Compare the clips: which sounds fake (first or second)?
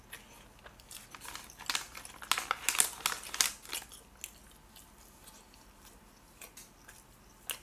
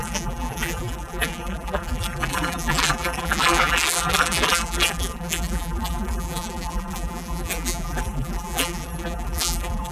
second